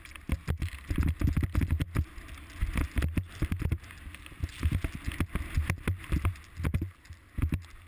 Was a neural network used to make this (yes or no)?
no